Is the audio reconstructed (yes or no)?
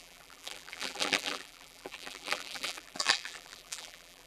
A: yes